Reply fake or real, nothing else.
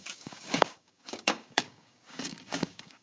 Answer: fake